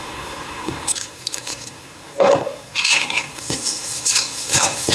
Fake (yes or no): yes